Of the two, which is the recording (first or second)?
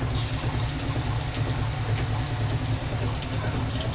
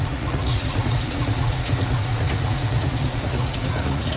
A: first